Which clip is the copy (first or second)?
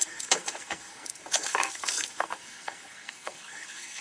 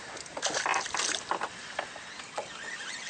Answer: first